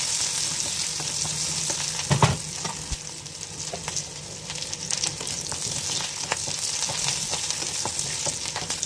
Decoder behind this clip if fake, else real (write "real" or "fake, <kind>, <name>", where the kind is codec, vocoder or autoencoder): real